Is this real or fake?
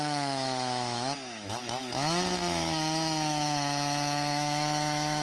fake